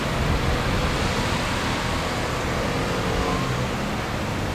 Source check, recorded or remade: recorded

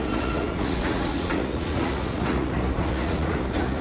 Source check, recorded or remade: remade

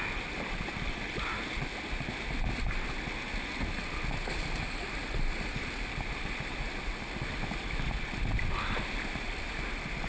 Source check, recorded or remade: recorded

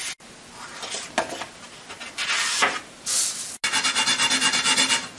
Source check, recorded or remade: recorded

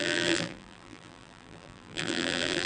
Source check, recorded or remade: remade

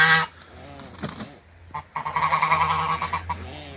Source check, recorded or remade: recorded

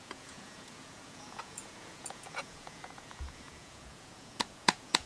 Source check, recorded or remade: remade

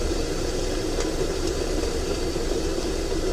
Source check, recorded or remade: remade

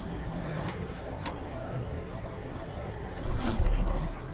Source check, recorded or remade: remade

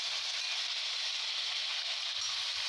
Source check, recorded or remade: recorded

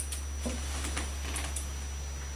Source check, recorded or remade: recorded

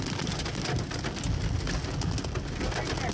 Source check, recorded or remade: recorded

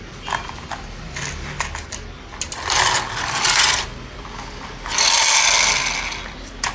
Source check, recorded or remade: recorded